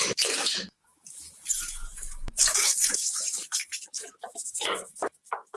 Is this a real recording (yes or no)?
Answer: no